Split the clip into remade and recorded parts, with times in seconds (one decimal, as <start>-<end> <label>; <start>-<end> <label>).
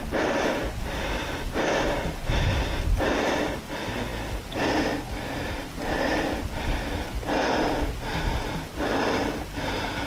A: 0.0-10.1 recorded